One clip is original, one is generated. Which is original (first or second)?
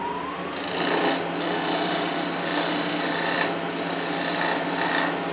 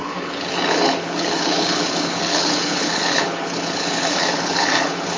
first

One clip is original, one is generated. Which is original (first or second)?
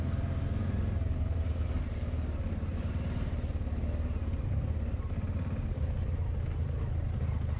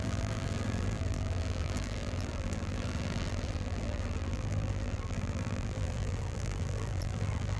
first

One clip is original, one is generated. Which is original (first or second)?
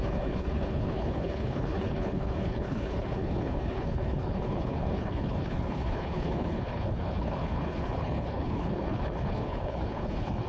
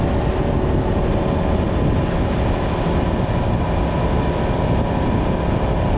second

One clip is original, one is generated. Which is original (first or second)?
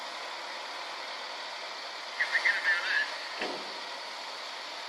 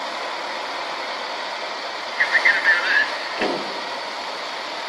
first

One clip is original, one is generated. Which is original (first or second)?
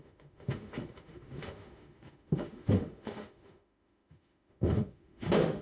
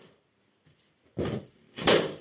second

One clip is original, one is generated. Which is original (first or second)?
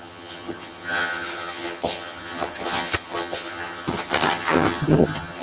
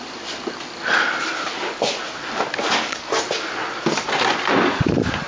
second